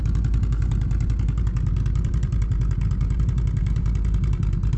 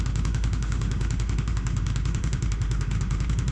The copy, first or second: second